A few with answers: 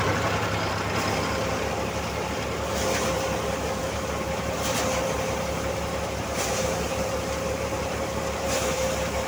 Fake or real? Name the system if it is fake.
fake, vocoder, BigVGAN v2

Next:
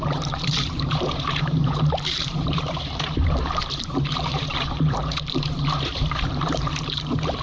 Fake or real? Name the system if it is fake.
fake, vocoder, BigVGAN v2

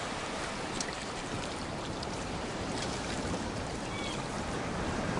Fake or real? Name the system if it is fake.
fake, vocoder, BigVGAN v2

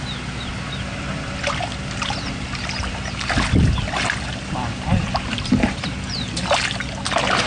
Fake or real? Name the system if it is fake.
real